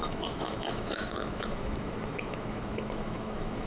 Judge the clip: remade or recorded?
remade